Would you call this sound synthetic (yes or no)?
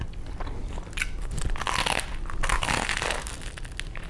no